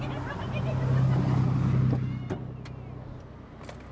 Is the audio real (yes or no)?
yes